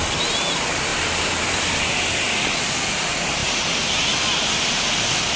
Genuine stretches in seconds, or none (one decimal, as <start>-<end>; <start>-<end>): 0.0-5.4